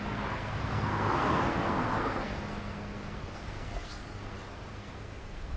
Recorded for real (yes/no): no